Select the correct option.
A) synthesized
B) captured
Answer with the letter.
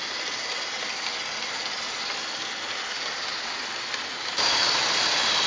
B